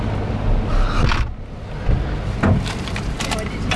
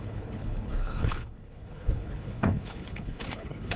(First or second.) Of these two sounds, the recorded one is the first